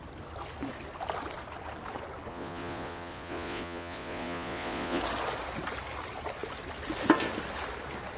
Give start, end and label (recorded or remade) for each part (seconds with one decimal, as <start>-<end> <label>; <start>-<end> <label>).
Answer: 0.0-2.3 recorded; 2.3-5.0 remade; 5.0-8.2 recorded